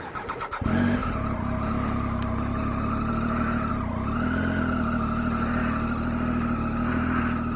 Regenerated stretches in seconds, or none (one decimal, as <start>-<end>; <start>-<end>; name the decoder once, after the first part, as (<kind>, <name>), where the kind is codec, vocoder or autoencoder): none